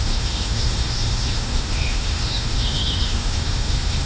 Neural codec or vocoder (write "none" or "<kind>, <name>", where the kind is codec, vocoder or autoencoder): autoencoder, DAC-VAE